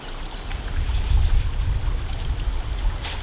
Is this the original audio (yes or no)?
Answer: yes